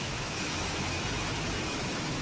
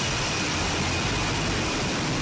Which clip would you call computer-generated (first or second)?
first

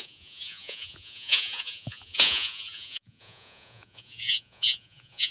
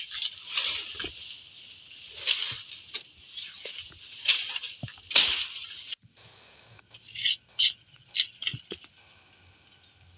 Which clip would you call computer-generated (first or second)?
first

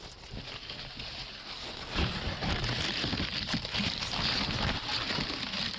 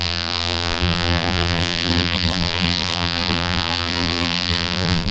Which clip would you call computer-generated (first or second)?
second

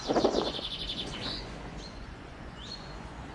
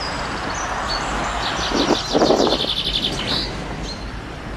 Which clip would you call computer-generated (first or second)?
first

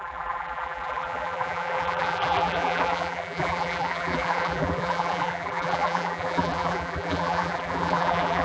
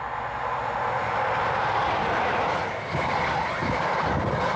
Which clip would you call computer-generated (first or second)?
first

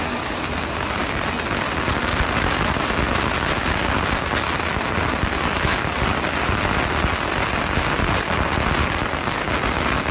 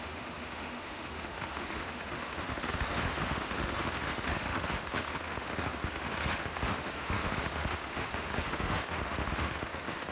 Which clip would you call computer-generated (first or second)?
second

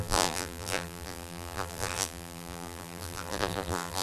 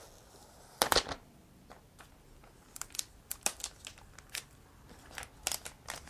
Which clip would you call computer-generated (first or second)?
first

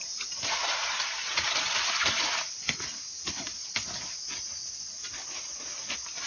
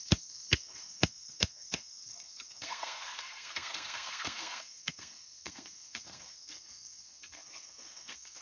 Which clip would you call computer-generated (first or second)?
second